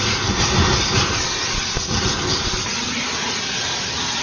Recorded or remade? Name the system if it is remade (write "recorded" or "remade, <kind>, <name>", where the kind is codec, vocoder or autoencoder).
recorded